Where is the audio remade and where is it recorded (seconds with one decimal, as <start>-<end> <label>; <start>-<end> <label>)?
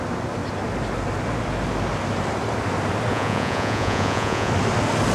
0.0-3.1 recorded; 3.1-4.5 remade; 4.5-5.1 recorded